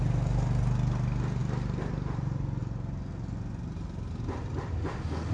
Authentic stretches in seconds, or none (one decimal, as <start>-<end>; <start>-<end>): 0.0-5.3